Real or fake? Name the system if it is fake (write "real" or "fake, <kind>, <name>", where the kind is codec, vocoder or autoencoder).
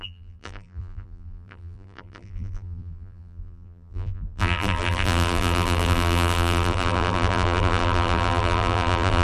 fake, vocoder, BigVGAN v2